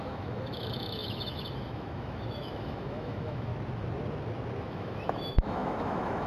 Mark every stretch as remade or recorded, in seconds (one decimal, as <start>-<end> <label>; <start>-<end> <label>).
0.0-3.5 remade; 3.5-4.6 recorded; 4.6-6.3 remade